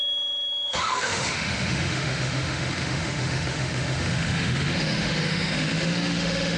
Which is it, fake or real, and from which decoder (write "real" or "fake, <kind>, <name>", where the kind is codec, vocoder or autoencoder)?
fake, autoencoder, DAC-VAE